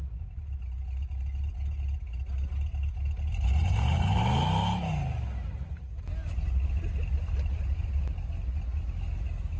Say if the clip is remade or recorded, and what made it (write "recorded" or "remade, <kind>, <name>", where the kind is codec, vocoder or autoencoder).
recorded